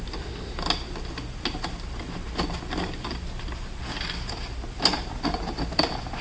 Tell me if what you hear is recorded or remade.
recorded